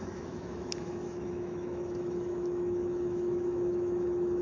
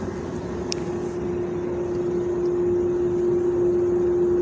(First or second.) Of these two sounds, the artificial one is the first